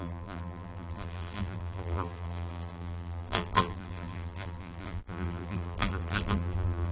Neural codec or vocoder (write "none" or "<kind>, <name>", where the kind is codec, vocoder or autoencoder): vocoder, BigVGAN v2